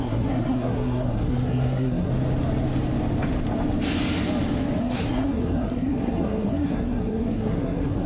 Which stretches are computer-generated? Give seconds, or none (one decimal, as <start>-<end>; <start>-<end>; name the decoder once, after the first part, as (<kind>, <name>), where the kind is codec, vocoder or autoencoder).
0.0-2.1 (codec, SNAC); 4.8-8.1